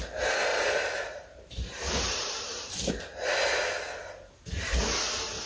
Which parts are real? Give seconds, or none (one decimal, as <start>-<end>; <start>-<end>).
0.0-0.5; 2.9-5.5